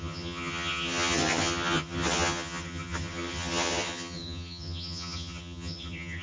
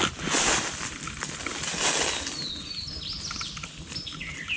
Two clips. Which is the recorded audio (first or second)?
second